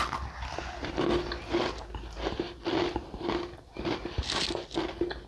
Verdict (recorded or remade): recorded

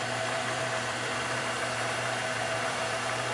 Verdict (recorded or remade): remade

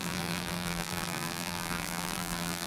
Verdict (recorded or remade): remade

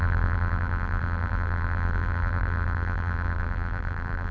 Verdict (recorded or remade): remade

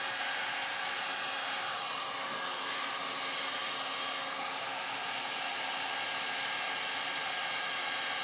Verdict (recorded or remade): recorded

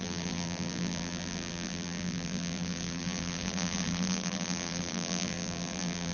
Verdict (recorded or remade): remade